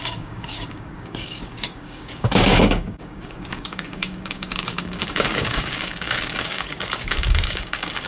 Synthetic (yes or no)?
yes